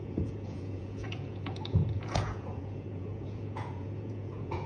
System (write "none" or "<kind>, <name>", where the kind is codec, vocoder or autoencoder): vocoder, Vocos